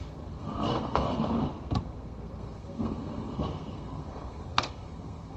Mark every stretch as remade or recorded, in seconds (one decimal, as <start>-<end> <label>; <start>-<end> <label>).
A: 0.0-5.4 remade